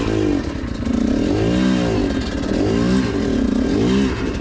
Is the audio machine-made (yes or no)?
no